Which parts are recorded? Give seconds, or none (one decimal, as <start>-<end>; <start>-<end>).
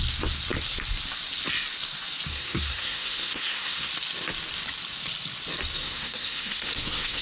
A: 0.0-2.3; 3.9-5.8